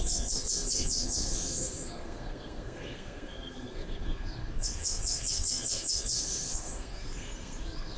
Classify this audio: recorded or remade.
remade